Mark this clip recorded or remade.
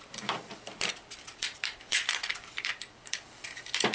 remade